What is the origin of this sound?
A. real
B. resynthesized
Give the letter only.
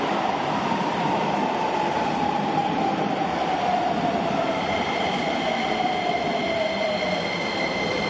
B